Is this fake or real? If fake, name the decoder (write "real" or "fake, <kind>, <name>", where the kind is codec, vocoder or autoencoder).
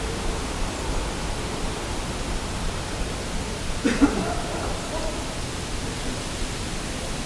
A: real